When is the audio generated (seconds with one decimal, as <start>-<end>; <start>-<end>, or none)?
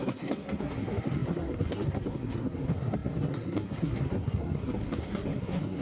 0.0-5.8